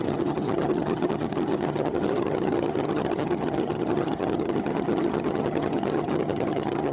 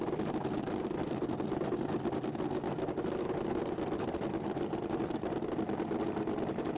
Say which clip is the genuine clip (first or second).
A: second